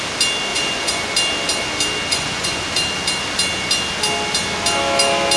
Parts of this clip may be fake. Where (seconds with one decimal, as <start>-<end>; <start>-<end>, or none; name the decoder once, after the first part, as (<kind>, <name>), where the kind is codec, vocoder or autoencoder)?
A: 0.5-1.1 (vocoder, Vocos); 2.1-2.6